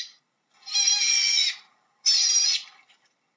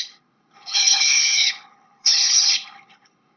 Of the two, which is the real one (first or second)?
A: first